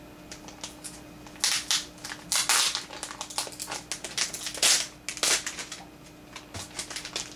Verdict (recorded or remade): recorded